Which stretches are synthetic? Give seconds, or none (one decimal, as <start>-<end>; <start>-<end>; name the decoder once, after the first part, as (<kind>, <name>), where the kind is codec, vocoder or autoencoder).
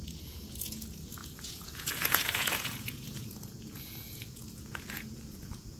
0.0-5.8 (vocoder, Vocos)